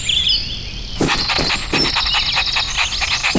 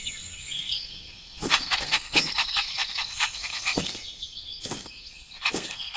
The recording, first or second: first